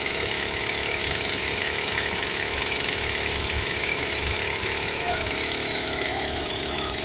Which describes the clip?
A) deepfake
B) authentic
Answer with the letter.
A